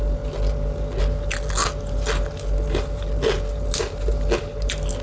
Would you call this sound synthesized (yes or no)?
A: no